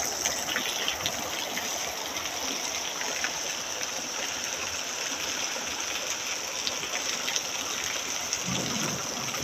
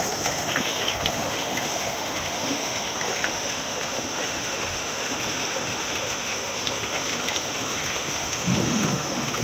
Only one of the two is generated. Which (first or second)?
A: second